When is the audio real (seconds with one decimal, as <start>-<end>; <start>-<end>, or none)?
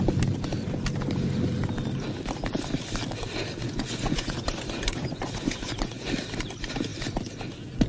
0.0-3.6; 6.1-7.9